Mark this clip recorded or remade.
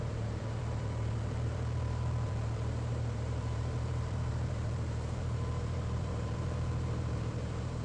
remade